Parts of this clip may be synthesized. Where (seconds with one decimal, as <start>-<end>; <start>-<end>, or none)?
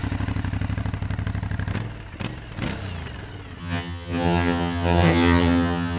3.6-6.0